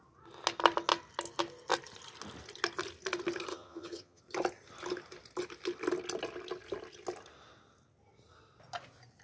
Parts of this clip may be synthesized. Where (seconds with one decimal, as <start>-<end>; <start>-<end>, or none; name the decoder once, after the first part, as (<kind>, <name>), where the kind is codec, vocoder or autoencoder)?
3.5-4.2 (vocoder, HiFi-GAN)